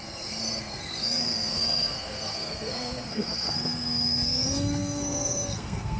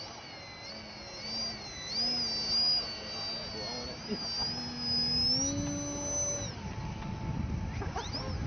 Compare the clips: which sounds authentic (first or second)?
second